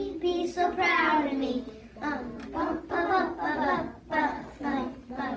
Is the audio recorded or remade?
recorded